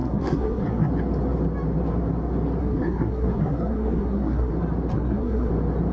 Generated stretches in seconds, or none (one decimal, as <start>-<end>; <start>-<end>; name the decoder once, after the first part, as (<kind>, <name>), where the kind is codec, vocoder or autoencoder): 0.0-0.9 (codec, SNAC); 2.6-4.5; 4.9-5.5